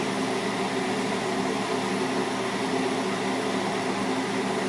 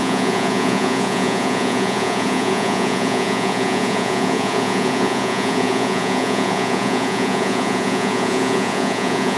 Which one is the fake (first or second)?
second